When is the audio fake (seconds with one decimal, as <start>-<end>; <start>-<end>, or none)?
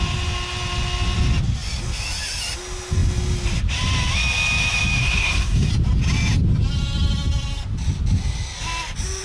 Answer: 5.0-5.7